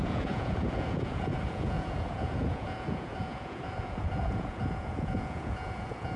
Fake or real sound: fake